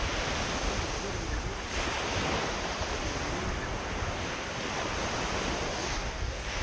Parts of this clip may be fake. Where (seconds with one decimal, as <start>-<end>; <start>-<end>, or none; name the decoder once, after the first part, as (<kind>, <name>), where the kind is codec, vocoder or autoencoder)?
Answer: 5.8-6.6 (codec, DAC)